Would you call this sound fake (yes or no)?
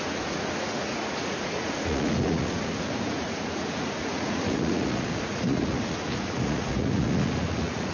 yes